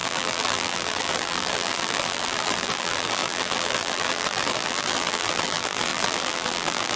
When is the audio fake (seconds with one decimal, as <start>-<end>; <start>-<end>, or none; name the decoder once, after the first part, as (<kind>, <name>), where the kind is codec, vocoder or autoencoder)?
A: 0.0-7.0 (vocoder, BigVGAN v2)